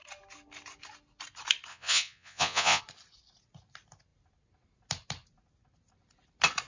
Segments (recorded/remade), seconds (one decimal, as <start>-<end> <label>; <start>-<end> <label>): 0.0-1.7 recorded; 1.7-2.8 remade; 2.8-6.7 recorded